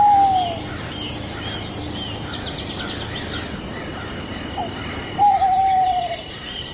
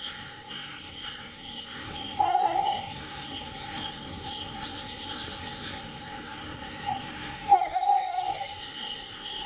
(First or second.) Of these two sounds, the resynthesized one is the second